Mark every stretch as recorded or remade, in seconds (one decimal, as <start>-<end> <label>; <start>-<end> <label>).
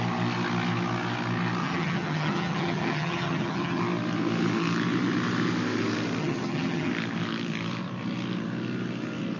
0.0-1.6 recorded; 1.6-3.8 remade; 3.8-6.2 recorded; 6.2-6.9 remade; 6.9-9.4 recorded